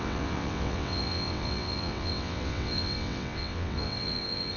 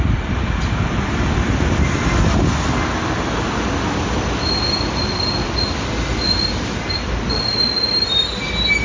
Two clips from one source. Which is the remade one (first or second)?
first